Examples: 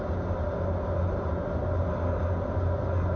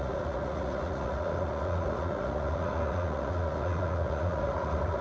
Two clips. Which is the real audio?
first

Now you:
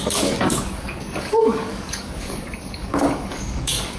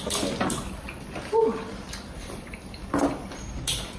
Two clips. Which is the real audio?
second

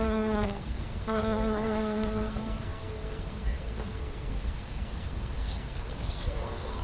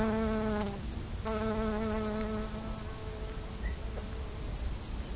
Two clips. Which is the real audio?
second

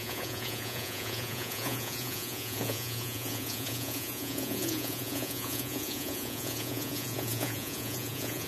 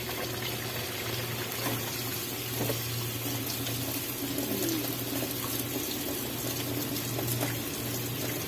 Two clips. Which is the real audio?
second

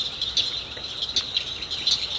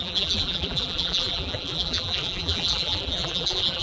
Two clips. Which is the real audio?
first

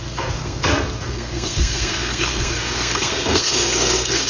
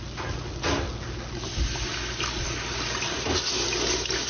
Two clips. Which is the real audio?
second